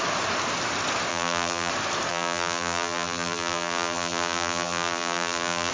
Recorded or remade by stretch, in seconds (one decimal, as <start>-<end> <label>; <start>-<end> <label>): 0.0-1.1 recorded; 1.1-1.7 remade; 1.7-2.1 recorded; 2.1-5.7 remade